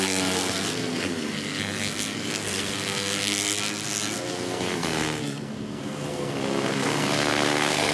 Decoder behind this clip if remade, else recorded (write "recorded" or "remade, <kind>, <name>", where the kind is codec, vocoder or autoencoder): remade, codec, SNAC